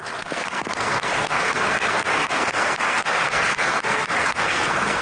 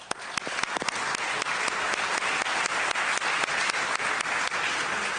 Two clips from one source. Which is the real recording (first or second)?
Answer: second